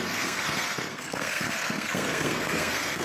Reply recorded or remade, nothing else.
remade